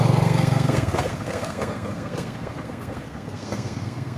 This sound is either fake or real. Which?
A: fake